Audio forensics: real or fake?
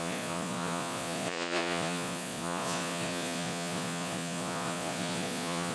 fake